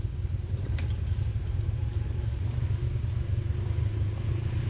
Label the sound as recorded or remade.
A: recorded